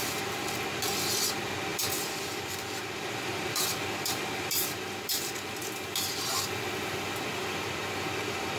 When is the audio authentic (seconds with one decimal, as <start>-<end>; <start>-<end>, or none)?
0.0-1.7; 5.7-8.6